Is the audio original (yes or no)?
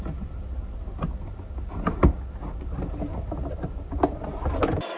yes